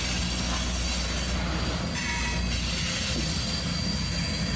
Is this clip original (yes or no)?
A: yes